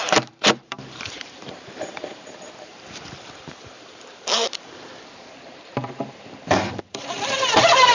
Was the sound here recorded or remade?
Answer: remade